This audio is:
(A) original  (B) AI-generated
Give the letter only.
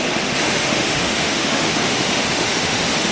B